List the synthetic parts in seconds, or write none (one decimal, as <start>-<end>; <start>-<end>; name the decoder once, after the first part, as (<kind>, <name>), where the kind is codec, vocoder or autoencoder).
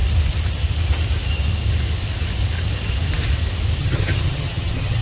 3.8-5.0 (vocoder, HiFi-GAN)